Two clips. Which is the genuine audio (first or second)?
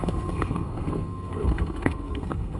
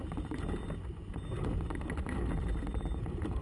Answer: second